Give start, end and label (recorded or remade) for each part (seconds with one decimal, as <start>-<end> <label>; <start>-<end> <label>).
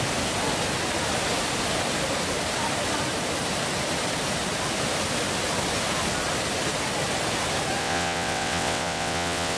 0.0-7.8 recorded; 7.8-9.6 remade